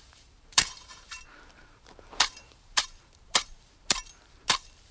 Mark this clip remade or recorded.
remade